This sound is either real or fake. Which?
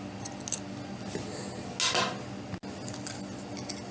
real